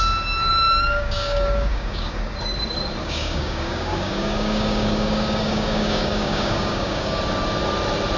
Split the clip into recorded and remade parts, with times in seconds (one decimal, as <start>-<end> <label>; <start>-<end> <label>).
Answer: 0.0-0.5 recorded; 0.5-2.2 remade; 2.2-3.0 recorded; 3.0-7.2 remade; 7.2-8.2 recorded